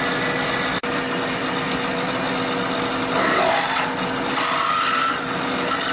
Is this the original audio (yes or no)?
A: yes